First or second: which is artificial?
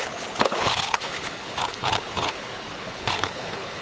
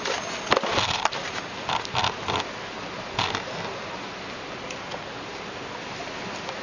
first